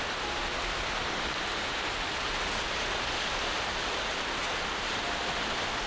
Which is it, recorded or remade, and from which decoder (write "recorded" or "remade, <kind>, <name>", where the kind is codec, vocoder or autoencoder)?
recorded